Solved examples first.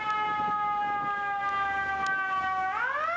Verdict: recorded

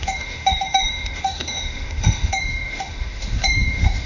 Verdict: remade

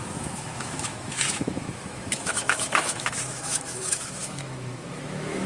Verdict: remade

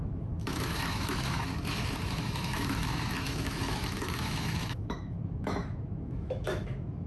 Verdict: remade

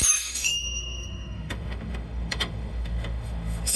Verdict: remade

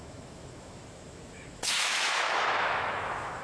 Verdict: remade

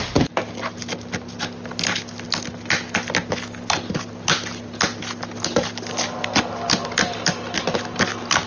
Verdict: recorded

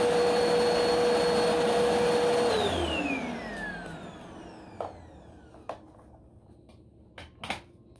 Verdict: recorded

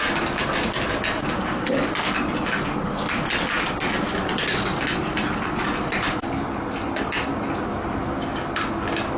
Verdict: recorded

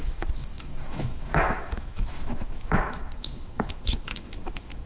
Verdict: remade